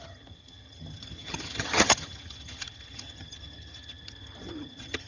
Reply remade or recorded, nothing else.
remade